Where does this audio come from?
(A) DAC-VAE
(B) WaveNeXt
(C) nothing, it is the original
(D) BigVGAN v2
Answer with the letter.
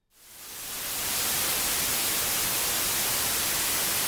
D